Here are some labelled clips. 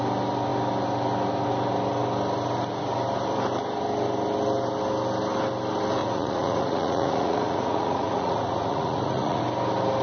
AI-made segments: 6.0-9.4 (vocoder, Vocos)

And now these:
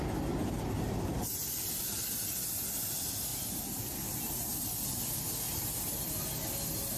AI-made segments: 0.4-2.0 (vocoder, BigVGAN v2); 3.3-4.6

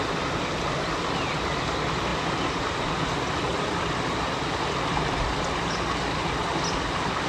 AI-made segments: none

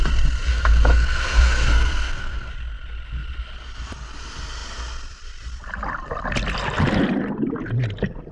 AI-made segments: 0.5-2.5 (codec, SNAC)

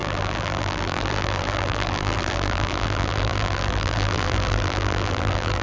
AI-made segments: 0.0-5.6 (vocoder, BigVGAN v2)

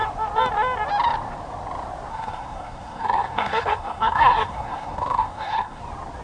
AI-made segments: 2.1-5.8 (codec, SNAC)

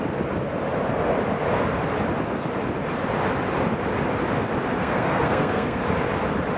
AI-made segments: 4.8-5.8 (codec, SNAC)